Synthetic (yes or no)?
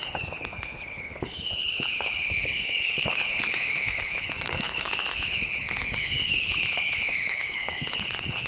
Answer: yes